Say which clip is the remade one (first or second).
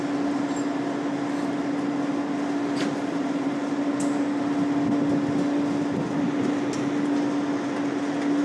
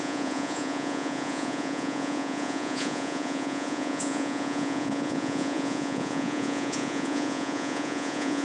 second